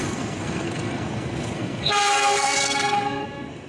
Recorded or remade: remade